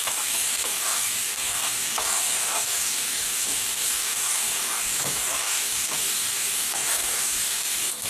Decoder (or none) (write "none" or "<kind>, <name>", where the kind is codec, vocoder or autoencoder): codec, DAC